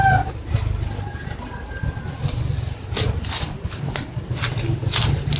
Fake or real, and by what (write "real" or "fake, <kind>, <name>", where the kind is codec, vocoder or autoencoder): real